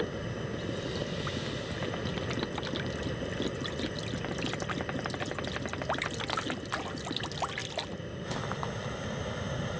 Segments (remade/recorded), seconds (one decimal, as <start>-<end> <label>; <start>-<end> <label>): 0.0-9.8 recorded